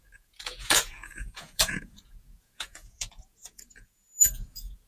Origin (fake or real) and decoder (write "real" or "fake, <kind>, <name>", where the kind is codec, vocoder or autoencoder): fake, vocoder, Vocos